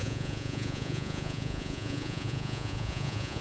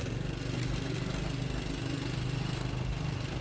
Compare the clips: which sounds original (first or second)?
second